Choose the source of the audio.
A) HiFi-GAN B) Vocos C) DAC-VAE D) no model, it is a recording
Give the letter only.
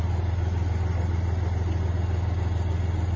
D